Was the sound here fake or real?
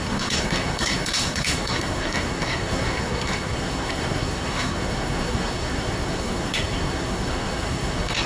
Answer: fake